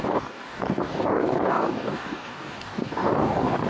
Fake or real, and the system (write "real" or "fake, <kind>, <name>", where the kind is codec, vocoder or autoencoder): fake, codec, DAC